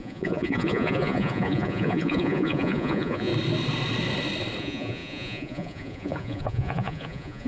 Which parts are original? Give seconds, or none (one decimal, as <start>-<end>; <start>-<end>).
3.3-4.6

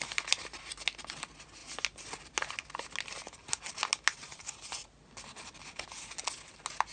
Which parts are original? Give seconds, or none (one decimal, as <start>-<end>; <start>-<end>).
0.0-6.9

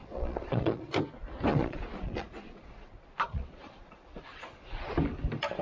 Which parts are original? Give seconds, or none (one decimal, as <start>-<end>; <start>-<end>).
0.9-1.5; 4.9-5.6